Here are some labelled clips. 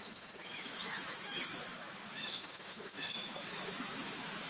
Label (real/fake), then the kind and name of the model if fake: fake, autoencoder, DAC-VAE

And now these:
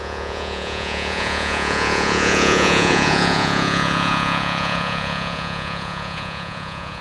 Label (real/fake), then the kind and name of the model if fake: fake, vocoder, Vocos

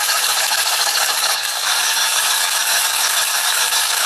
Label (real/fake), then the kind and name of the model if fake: fake, codec, DAC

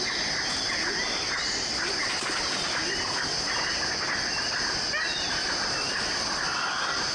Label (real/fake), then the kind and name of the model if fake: real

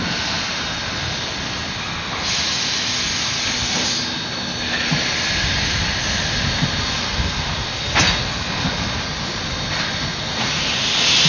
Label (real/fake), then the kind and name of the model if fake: real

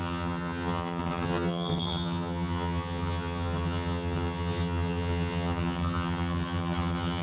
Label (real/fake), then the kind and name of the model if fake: fake, vocoder, HiFi-GAN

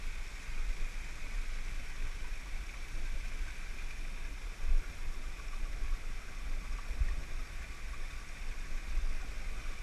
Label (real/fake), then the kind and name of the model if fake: real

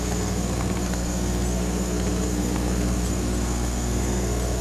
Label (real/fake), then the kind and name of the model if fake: fake, codec, SNAC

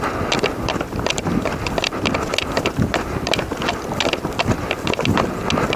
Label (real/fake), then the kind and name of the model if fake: real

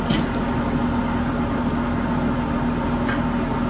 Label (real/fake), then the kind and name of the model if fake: real